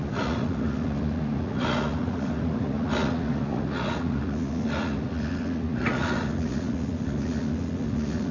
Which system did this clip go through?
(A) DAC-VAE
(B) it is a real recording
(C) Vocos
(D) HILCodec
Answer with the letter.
C